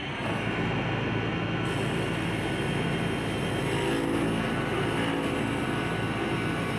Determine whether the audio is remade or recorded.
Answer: recorded